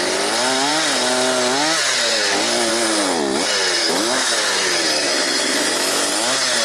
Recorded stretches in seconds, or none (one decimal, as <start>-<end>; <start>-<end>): 0.0-3.8; 6.1-6.6